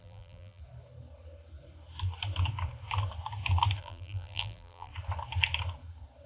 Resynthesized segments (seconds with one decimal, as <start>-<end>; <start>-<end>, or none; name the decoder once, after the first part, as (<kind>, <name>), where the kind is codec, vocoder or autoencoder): 0.0-0.6 (vocoder, BigVGAN v2); 3.8-4.9